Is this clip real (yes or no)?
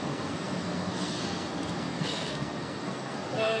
no